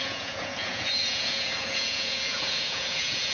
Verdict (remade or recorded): remade